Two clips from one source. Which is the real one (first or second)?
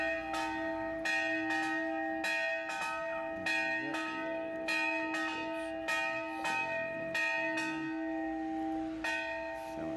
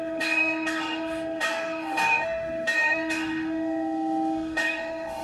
first